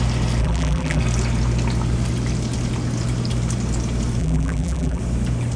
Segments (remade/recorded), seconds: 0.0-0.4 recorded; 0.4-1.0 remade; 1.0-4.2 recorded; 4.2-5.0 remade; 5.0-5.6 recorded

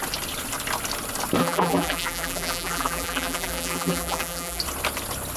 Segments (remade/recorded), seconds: 0.0-1.4 recorded; 1.4-4.6 remade; 4.6-5.4 recorded

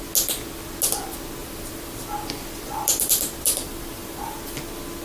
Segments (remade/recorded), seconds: 0.0-1.4 recorded; 1.4-4.3 remade; 4.3-5.0 recorded

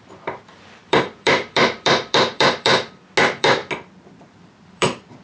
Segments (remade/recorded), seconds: 0.0-2.7 remade; 2.7-3.2 recorded; 3.2-3.6 remade; 3.6-4.2 recorded; 4.2-5.2 remade

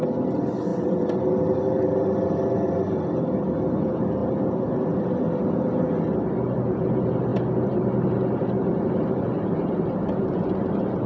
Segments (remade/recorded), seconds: 0.0-0.7 recorded; 0.7-2.0 remade; 2.0-7.3 recorded; 7.3-10.7 remade; 10.7-11.1 recorded

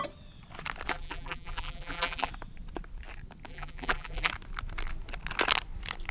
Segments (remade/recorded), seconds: 0.0-0.9 recorded; 0.9-2.3 remade; 2.3-3.5 recorded; 3.5-4.3 remade; 4.3-6.1 recorded

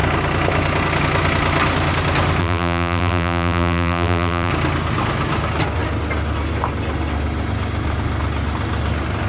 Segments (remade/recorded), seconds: 0.0-2.4 recorded; 2.4-4.5 remade; 4.5-9.3 recorded

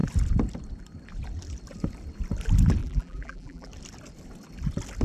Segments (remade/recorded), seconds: 0.0-2.8 recorded; 2.8-3.7 remade; 3.7-5.0 recorded